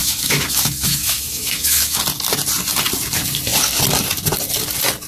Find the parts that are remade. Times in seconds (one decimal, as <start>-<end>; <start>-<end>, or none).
0.0-2.0